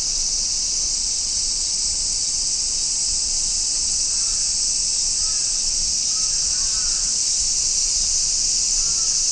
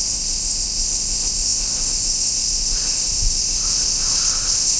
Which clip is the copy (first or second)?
second